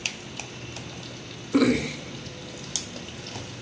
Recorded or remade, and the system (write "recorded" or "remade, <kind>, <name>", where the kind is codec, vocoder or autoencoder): recorded